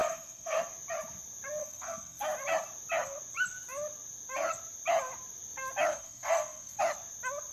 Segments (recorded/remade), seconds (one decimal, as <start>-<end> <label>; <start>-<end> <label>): 0.0-0.6 remade; 0.6-1.6 recorded; 1.6-2.2 remade; 2.2-5.9 recorded; 5.9-6.8 remade; 6.8-7.5 recorded

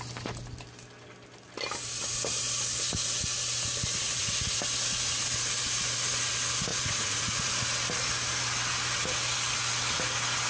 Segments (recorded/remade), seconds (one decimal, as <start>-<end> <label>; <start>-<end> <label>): 0.0-4.0 recorded; 4.0-4.6 remade; 4.6-6.7 recorded; 6.7-7.5 remade; 7.5-10.5 recorded

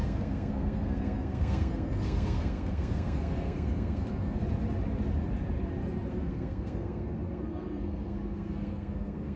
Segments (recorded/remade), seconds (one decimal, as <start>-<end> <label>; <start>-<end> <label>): 0.0-4.4 remade; 4.4-6.1 recorded; 6.1-9.4 remade